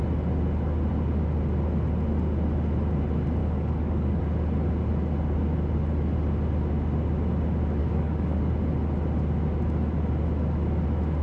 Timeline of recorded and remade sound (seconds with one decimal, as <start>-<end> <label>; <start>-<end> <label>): 0.0-3.4 recorded; 3.4-4.2 remade; 4.2-7.8 recorded; 7.8-8.5 remade; 8.5-11.2 recorded